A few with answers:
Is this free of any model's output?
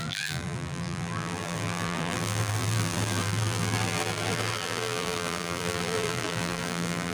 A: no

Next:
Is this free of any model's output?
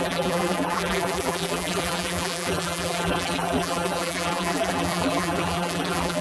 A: no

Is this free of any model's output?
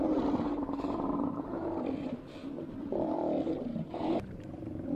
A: no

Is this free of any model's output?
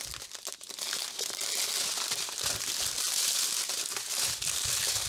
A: yes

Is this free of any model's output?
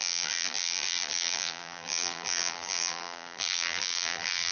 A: no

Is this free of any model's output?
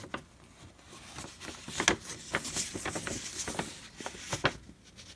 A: yes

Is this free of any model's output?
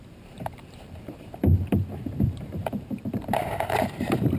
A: no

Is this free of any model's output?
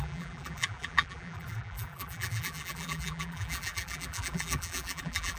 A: no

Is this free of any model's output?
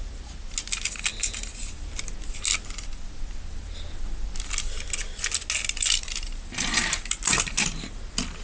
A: yes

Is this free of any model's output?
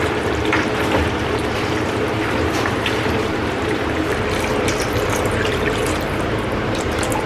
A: no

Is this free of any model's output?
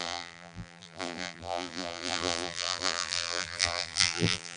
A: no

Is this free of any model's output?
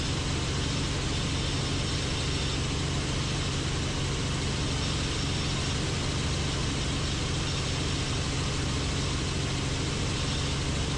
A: yes